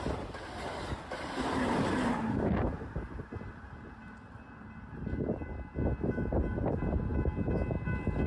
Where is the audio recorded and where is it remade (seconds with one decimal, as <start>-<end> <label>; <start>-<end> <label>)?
0.0-8.3 recorded